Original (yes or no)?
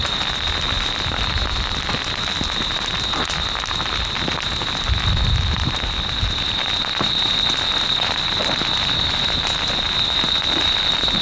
yes